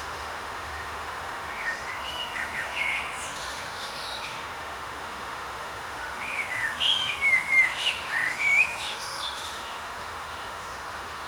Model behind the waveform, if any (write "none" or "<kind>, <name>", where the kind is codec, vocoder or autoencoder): autoencoder, DAC-VAE